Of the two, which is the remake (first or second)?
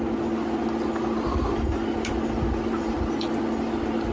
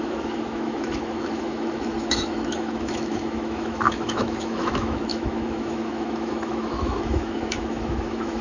second